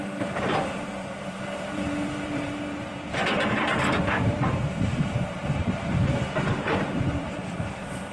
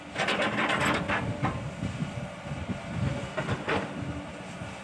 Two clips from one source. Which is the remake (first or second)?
first